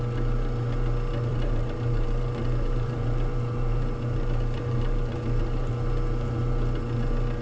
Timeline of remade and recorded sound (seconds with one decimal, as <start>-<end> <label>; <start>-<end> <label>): 0.0-1.3 recorded; 1.3-5.7 remade; 5.7-7.4 recorded